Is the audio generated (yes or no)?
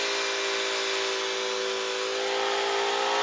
no